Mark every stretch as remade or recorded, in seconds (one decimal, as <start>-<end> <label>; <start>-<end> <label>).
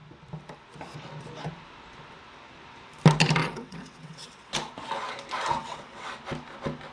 0.0-3.4 recorded; 3.4-4.5 remade; 4.5-5.6 recorded; 5.6-6.1 remade; 6.1-6.9 recorded